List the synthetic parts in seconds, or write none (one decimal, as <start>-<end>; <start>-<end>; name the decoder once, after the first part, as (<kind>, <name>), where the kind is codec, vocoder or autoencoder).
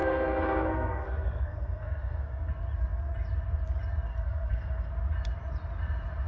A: 0.0-2.5 (codec, SNAC); 4.1-4.9